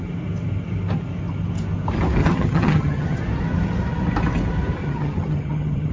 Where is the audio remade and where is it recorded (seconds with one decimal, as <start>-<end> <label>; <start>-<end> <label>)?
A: 0.0-2.2 recorded; 2.2-3.2 remade; 3.2-4.8 recorded; 4.8-5.9 remade